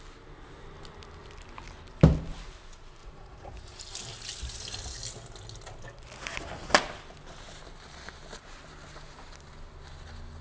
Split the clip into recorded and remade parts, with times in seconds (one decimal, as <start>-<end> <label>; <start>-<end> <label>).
0.0-3.0 recorded; 3.0-3.5 remade; 3.5-10.4 recorded